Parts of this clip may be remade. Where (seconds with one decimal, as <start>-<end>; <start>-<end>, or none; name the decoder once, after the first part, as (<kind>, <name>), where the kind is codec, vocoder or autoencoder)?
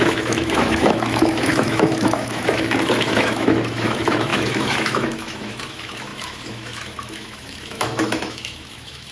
0.0-9.1 (autoencoder, DAC-VAE)